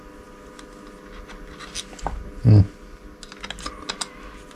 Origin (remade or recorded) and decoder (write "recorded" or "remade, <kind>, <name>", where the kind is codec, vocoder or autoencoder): recorded